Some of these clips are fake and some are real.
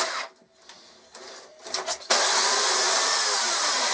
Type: real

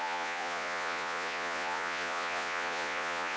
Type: fake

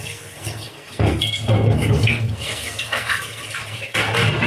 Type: fake